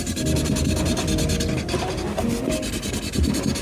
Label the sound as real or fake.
real